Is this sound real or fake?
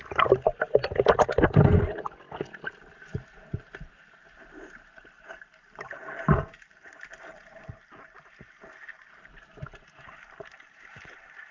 real